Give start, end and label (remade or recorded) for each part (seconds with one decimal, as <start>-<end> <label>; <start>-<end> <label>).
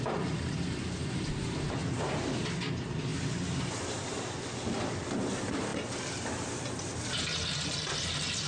0.0-8.5 recorded